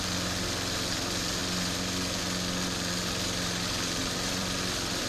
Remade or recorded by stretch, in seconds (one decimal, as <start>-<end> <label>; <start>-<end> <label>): 0.0-4.0 recorded; 4.0-5.1 remade